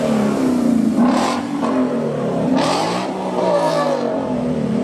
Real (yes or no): no